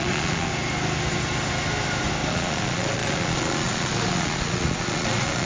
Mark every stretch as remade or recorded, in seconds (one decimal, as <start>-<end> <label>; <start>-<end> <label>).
0.0-0.5 remade; 0.5-2.3 recorded; 2.3-5.5 remade